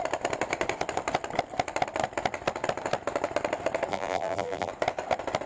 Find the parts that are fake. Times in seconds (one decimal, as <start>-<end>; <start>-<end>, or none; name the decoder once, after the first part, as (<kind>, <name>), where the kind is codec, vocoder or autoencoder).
3.9-4.7 (vocoder, BigVGAN v2)